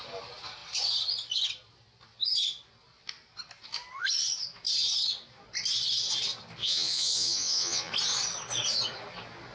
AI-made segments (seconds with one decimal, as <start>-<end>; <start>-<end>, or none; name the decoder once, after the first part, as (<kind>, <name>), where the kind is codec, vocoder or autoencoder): 6.6-7.9 (vocoder, Vocos)